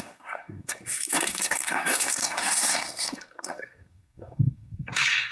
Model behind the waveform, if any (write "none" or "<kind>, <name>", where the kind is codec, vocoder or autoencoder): codec, SNAC